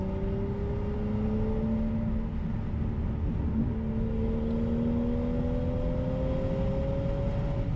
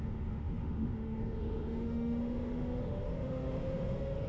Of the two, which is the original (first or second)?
first